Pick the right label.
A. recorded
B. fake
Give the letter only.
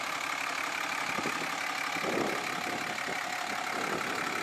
A